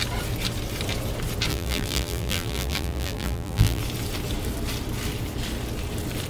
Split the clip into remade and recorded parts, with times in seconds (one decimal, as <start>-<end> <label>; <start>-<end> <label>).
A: 0.0-1.5 recorded; 1.5-3.8 remade; 3.8-6.3 recorded